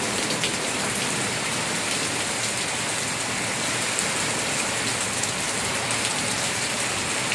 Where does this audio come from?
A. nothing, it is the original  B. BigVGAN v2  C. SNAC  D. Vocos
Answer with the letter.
A